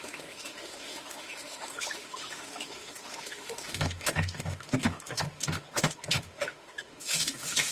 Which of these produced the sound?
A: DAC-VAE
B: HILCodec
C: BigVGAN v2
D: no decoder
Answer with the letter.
A